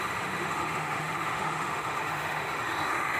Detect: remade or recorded remade